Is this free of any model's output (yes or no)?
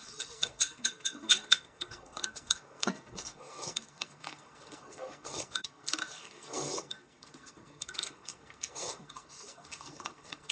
no